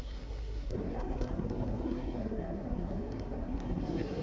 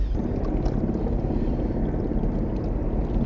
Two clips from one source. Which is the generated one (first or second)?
first